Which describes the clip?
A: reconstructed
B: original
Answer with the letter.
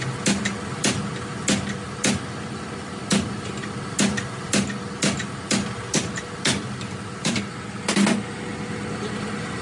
B